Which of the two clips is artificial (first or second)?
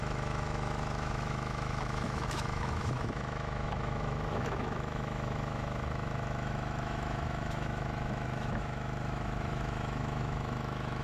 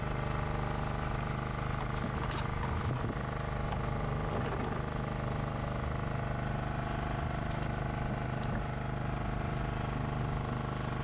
first